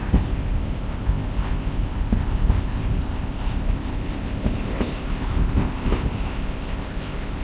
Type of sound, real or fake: fake